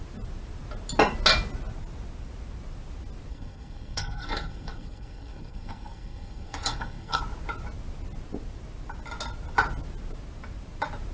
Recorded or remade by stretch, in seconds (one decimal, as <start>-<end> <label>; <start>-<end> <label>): 0.0-3.3 recorded; 3.3-7.2 remade; 7.2-11.1 recorded